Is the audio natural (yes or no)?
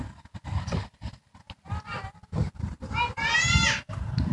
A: yes